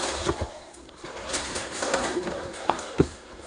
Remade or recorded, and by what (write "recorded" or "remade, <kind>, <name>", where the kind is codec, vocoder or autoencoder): remade, codec, SNAC